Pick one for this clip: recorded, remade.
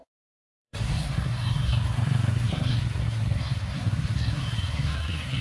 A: remade